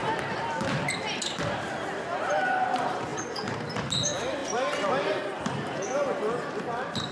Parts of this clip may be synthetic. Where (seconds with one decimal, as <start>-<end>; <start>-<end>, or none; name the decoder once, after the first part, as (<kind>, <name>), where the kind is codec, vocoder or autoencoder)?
none